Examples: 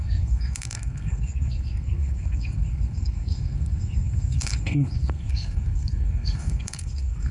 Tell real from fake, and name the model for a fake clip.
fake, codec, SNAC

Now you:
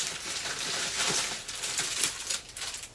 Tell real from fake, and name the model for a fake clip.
fake, vocoder, BigVGAN v2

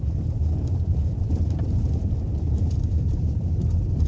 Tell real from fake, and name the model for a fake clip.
fake, vocoder, BigVGAN v2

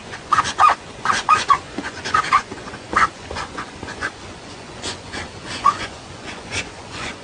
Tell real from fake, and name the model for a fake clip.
fake, vocoder, Vocos